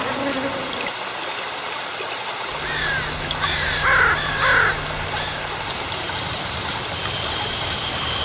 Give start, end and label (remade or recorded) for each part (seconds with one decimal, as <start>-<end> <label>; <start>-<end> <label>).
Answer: 0.0-8.2 recorded

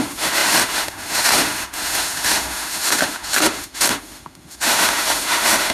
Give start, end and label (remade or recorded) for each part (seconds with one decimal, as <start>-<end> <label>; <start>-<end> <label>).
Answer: 0.0-5.7 remade

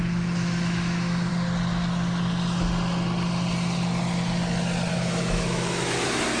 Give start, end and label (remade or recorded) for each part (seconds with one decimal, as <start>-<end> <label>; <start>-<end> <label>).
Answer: 0.0-1.3 remade; 1.3-4.9 recorded; 4.9-6.4 remade

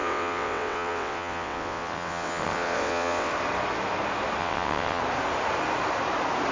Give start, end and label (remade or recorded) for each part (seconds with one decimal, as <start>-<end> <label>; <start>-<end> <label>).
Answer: 0.0-3.3 remade; 3.3-4.4 recorded; 4.4-5.0 remade; 5.0-6.5 recorded

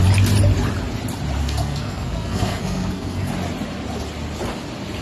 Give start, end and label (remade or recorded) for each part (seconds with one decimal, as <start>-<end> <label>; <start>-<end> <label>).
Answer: 0.0-1.4 recorded; 1.4-3.3 remade; 3.3-5.0 recorded

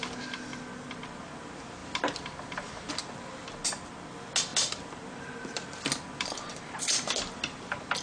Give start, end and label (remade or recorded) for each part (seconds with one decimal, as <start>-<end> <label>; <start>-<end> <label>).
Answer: 0.0-8.0 recorded

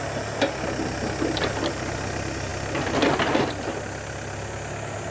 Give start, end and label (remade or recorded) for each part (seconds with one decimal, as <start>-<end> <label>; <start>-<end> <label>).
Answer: 0.0-5.1 recorded

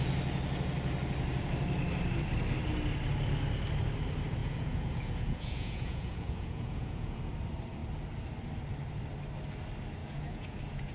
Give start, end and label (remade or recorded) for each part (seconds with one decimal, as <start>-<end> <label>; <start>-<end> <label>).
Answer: 0.0-4.4 recorded; 4.4-7.2 remade; 7.2-10.0 recorded; 10.0-10.9 remade